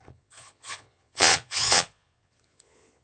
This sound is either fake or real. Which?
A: fake